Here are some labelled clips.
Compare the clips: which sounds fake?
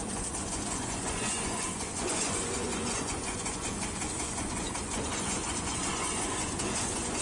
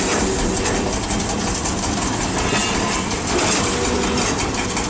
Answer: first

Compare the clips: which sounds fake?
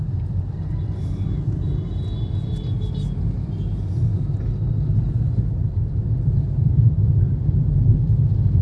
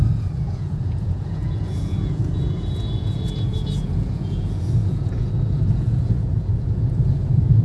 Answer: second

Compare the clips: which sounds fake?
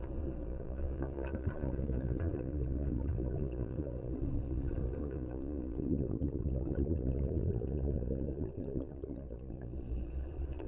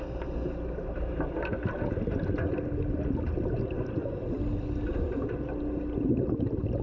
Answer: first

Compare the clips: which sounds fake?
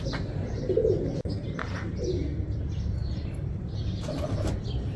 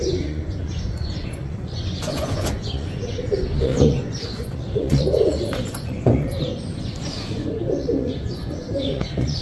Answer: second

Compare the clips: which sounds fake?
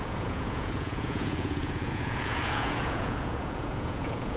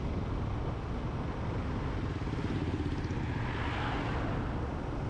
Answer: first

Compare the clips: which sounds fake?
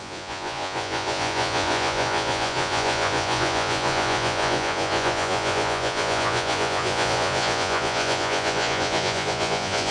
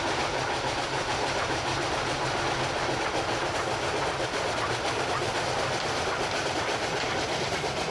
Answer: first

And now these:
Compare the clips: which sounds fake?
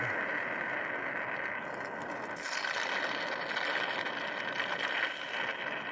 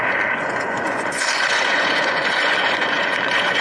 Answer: second